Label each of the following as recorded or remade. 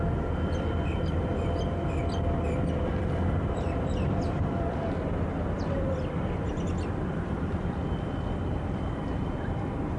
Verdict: remade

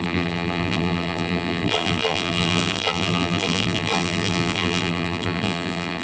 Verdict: remade